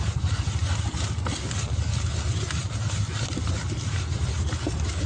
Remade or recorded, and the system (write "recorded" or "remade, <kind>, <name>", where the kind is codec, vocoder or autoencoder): recorded